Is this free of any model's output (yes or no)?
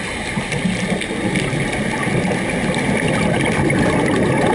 yes